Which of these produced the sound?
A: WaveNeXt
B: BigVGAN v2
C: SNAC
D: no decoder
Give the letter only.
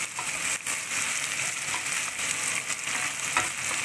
D